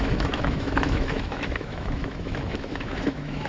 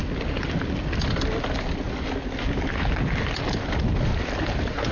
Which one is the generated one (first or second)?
first